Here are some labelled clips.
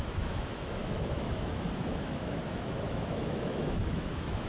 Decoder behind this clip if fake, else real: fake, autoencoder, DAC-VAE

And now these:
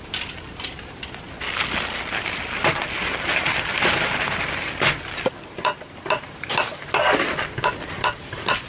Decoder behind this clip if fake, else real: real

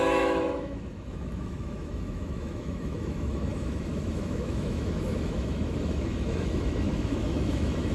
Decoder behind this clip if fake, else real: fake, autoencoder, DAC-VAE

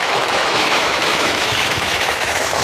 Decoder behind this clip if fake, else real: fake, autoencoder, DAC-VAE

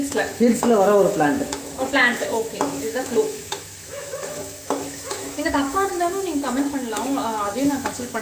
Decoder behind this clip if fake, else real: fake, autoencoder, DAC-VAE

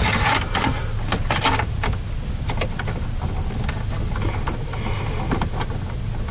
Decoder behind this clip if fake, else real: real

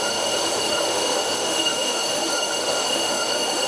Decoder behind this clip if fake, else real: fake, autoencoder, DAC-VAE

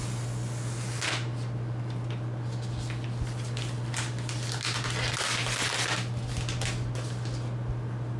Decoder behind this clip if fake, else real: real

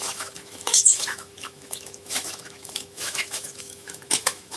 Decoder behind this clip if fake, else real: fake, autoencoder, DAC-VAE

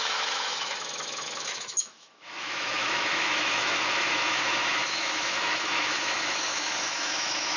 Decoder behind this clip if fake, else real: fake, autoencoder, DAC-VAE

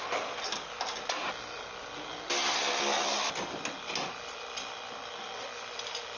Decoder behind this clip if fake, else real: real